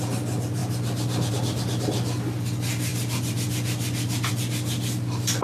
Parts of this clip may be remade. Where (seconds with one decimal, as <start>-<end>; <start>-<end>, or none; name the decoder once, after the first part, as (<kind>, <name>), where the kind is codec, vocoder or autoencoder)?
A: none